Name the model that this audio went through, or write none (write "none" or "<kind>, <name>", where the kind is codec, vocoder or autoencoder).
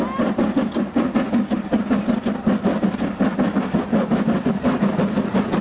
none